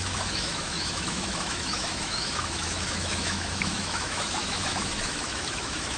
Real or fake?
fake